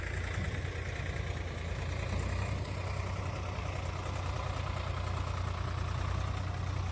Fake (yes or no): no